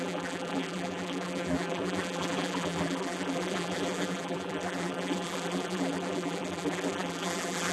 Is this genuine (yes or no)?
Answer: no